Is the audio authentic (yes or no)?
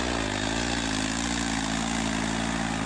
yes